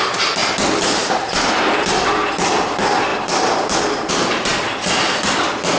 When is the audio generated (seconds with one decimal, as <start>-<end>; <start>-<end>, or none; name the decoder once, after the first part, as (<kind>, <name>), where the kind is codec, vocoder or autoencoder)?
0.4-1.6 (vocoder, BigVGAN v2); 3.1-4.1